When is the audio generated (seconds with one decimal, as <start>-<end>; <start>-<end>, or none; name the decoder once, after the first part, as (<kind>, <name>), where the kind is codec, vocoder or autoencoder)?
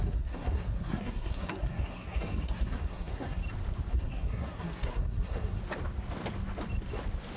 0.0-3.4 (codec, SNAC); 3.9-5.6